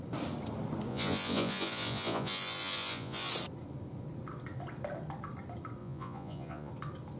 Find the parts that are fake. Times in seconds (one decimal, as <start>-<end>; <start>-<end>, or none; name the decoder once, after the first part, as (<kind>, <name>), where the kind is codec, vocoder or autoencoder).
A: 0.9-3.3 (vocoder, Vocos); 5.8-6.7